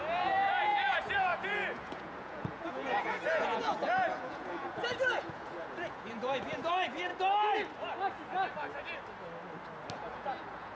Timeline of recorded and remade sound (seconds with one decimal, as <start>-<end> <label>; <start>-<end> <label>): 0.0-7.1 remade; 7.1-9.9 recorded; 9.9-10.8 remade